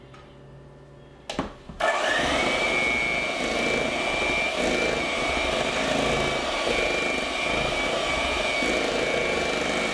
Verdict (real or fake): real